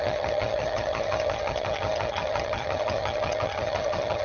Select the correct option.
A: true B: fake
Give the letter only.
B